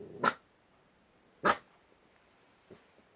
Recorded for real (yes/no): yes